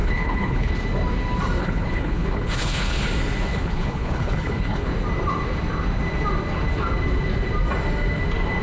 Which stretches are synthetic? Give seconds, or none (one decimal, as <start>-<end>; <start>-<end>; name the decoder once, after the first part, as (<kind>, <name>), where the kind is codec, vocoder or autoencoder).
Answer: 0.0-0.7 (codec, HILCodec); 1.6-3.1; 3.5-4.9